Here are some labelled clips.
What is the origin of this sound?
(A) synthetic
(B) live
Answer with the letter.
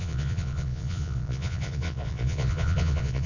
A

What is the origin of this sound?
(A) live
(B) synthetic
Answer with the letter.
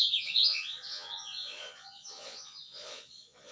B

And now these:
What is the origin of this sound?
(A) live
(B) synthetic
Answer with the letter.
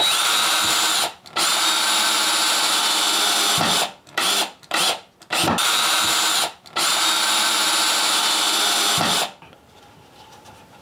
A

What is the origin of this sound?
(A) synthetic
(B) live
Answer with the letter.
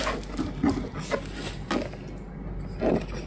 B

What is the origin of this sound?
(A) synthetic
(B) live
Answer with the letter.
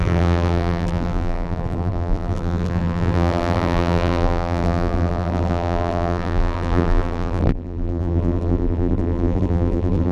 A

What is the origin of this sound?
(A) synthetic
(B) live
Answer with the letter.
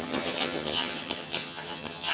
A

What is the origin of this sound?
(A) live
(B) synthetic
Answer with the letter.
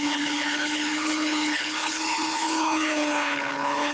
B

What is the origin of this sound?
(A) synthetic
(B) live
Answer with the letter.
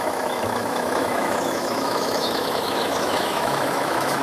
A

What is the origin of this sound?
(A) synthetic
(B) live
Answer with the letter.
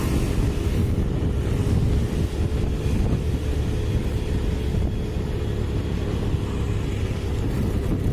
B